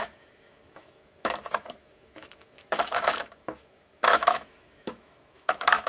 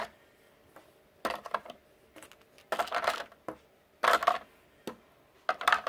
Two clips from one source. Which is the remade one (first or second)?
first